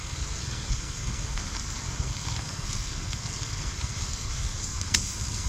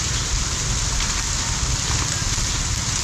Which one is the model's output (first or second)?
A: first